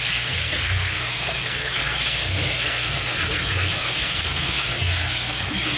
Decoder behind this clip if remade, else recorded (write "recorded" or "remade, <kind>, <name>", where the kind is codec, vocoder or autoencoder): remade, codec, SNAC